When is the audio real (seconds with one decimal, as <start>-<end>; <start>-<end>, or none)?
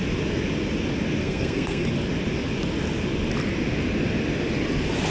0.0-1.2; 1.9-5.1